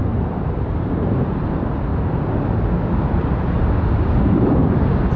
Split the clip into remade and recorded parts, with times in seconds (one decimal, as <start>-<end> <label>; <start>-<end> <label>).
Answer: 0.0-1.9 remade; 1.9-5.2 recorded